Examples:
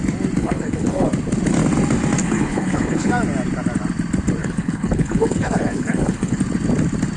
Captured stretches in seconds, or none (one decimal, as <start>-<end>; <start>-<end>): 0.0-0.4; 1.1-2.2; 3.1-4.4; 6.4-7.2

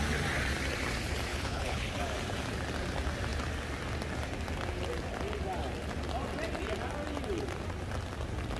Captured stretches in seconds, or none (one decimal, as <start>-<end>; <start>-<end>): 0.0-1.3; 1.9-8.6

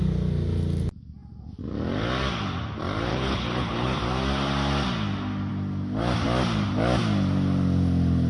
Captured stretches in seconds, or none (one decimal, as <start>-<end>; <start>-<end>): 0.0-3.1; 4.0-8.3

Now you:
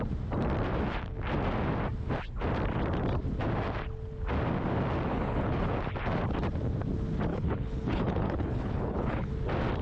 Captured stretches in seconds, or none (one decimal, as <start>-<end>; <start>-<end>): 0.0-5.1; 5.7-7.3; 9.3-9.8

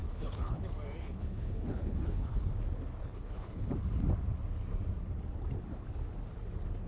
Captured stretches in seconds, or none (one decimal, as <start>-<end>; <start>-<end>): 0.6-1.0; 2.5-3.0; 3.7-6.9